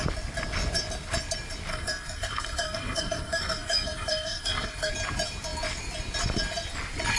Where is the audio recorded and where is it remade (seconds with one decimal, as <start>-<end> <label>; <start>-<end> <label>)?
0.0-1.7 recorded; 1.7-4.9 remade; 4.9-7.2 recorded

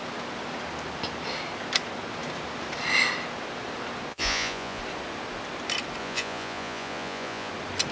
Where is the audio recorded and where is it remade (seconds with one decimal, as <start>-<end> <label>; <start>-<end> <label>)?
0.0-4.1 recorded; 4.1-4.8 remade; 4.8-6.0 recorded; 6.0-7.5 remade; 7.5-7.9 recorded

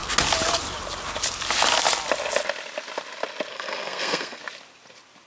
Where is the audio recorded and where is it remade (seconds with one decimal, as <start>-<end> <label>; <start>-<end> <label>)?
0.0-3.5 recorded; 3.5-4.4 remade; 4.4-5.3 recorded

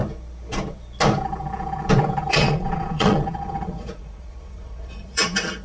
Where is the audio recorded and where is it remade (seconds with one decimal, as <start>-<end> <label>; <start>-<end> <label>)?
0.0-2.3 recorded; 2.3-5.6 remade

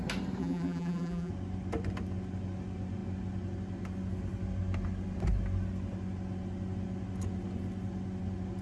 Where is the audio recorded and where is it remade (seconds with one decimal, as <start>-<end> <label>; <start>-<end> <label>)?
0.0-0.4 recorded; 0.4-1.3 remade; 1.3-8.6 recorded